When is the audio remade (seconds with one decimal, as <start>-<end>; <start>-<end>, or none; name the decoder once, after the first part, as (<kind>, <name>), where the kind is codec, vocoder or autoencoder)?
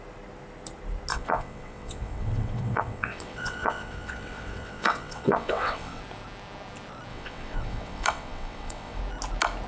1.1-6.0 (vocoder, WaveNeXt); 7.1-9.0